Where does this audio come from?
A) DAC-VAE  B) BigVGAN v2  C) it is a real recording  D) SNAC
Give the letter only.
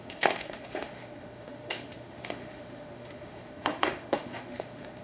A